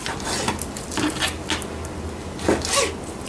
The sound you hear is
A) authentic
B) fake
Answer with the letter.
A